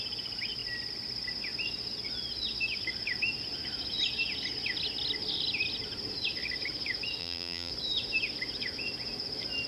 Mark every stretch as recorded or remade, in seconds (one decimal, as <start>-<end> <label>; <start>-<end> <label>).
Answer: 0.0-7.2 recorded; 7.2-7.7 remade; 7.7-9.7 recorded